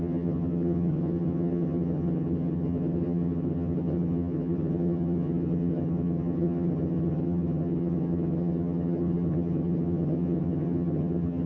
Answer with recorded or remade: remade